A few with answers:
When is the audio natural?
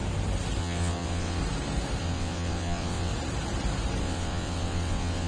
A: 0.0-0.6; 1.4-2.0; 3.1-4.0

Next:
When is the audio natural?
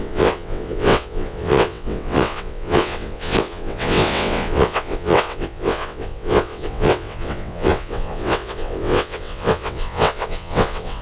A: none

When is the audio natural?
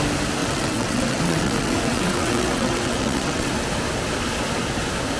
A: 0.0-0.4; 3.5-5.2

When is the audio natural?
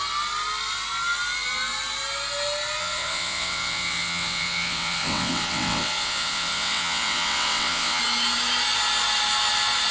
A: 0.0-2.8; 8.0-9.9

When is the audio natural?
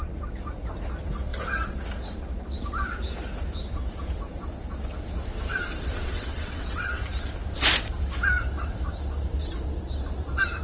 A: 0.0-5.5; 7.0-10.6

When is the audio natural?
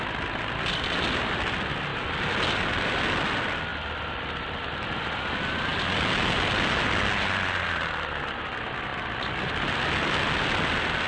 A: 0.0-11.1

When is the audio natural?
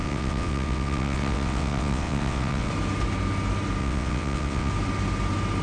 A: 2.7-3.8; 4.7-5.6